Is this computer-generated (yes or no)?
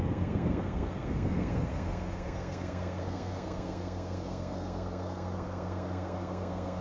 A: yes